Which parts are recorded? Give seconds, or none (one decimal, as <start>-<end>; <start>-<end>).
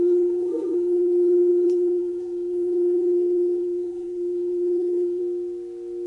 5.2-6.1